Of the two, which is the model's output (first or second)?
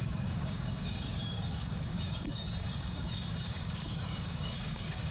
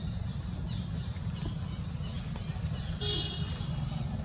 first